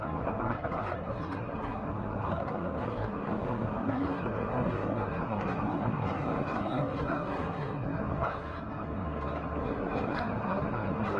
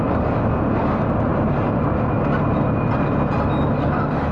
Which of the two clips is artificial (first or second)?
first